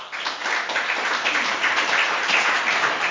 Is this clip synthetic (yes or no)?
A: no